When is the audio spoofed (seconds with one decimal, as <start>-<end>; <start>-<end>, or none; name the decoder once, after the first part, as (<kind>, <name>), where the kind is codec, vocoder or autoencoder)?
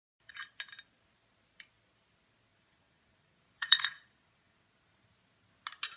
2.5-4.7 (vocoder, Vocos)